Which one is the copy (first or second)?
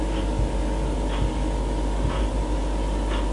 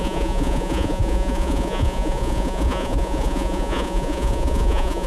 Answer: second